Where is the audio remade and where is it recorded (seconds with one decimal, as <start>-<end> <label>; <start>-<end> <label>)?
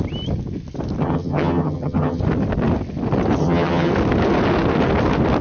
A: 0.0-1.0 recorded; 1.0-2.2 remade; 2.2-3.4 recorded; 3.4-3.9 remade; 3.9-5.4 recorded